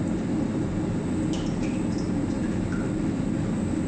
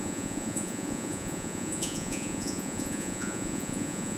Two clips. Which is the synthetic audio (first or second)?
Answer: second